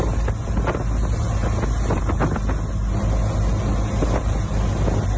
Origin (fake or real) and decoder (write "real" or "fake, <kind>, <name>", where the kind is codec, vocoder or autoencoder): real